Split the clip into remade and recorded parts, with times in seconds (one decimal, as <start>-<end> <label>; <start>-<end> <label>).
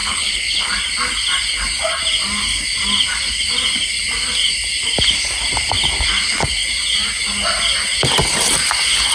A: 0.0-0.7 remade; 0.7-9.1 recorded